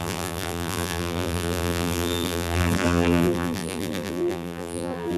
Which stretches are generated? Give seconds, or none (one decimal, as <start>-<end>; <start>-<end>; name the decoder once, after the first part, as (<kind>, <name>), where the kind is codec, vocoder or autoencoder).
0.0-5.2 (vocoder, BigVGAN v2)